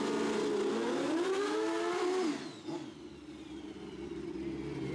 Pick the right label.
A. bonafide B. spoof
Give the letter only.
A